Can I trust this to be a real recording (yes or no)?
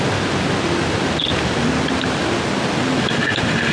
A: yes